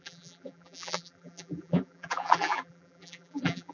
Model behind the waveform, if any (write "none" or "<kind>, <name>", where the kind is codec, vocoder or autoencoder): vocoder, BigVGAN v2